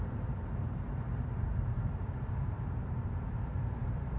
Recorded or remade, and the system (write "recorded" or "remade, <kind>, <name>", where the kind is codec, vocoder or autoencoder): remade, vocoder, BigVGAN v2